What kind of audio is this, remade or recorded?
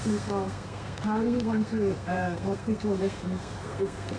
remade